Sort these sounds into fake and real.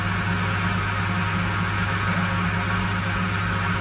real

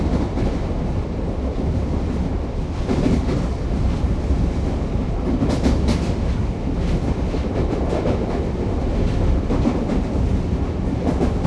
real